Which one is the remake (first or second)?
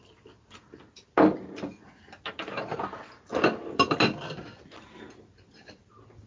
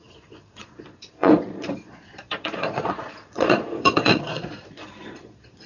second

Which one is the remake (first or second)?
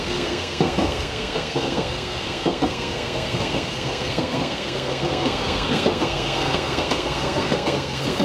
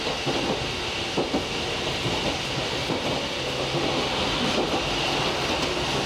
first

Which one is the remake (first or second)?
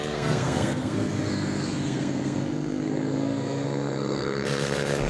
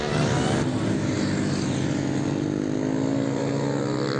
first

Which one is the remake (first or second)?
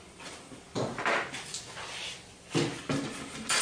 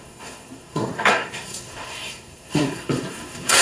second